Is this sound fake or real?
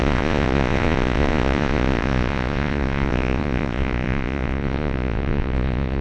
fake